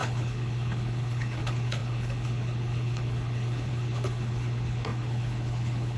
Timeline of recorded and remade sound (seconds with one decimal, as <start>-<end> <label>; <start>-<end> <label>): 0.0-6.0 remade